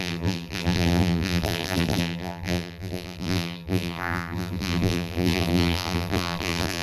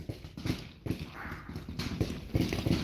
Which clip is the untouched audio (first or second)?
second